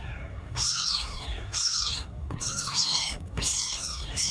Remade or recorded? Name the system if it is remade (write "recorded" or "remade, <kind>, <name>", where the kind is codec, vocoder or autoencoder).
remade, codec, SNAC